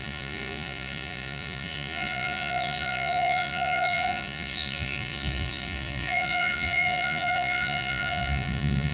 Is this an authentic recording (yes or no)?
no